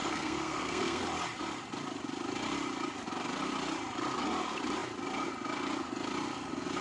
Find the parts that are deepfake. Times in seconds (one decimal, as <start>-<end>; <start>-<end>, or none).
0.0-1.0